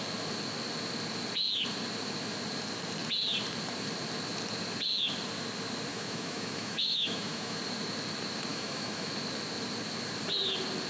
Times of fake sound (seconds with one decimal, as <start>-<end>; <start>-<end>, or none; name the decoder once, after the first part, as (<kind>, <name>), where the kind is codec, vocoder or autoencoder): 5.9-7.6 (autoencoder, DAC-VAE); 8.5-9.1